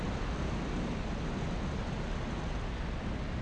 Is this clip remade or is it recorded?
recorded